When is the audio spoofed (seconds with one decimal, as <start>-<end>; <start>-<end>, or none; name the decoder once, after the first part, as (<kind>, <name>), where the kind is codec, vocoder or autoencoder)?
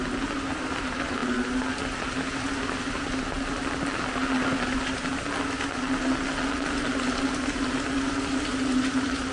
none